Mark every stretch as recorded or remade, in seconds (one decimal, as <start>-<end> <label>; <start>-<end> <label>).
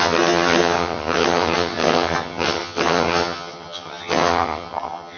0.0-5.2 remade